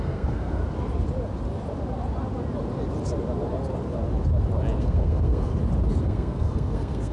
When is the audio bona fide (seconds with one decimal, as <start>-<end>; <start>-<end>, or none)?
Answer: 0.6-4.8; 5.5-6.0